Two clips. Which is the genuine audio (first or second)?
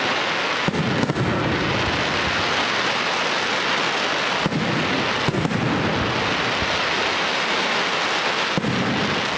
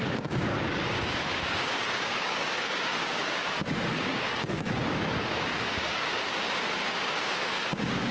first